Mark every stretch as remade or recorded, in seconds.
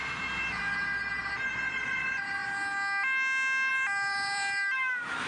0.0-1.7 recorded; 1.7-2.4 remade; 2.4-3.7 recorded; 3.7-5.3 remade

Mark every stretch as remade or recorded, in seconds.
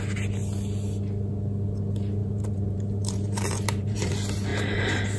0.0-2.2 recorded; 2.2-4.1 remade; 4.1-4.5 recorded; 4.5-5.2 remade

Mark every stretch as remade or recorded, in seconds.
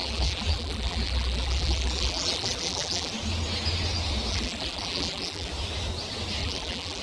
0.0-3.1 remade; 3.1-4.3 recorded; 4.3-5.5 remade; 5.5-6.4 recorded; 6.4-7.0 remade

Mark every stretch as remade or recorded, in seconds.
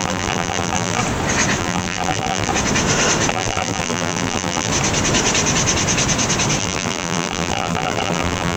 0.0-1.0 remade; 1.0-1.6 recorded; 1.6-2.5 remade; 2.5-3.3 recorded; 3.3-4.7 remade; 4.7-6.6 recorded; 6.6-8.6 remade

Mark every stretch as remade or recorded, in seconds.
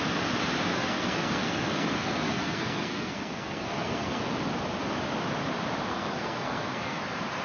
0.0-0.7 recorded; 0.7-4.2 remade; 4.2-5.9 recorded; 5.9-7.0 remade; 7.0-7.4 recorded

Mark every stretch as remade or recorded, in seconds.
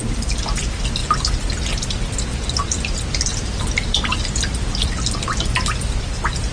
0.0-3.3 recorded; 3.3-4.4 remade; 4.4-6.5 recorded